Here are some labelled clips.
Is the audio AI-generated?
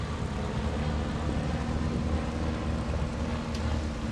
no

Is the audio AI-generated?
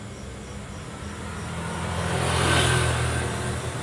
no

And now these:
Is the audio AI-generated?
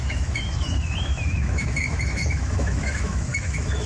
yes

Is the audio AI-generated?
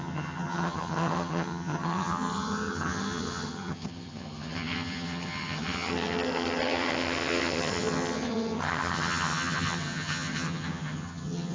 yes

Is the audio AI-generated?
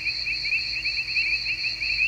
no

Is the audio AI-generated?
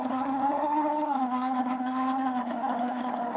yes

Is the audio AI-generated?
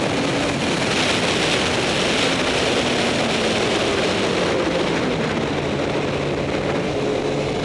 no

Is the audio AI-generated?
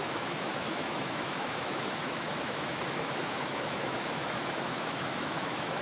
yes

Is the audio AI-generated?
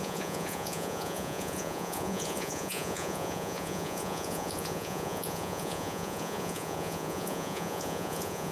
yes